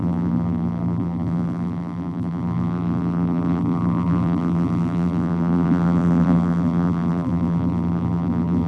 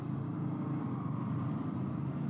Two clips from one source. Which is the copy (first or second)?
first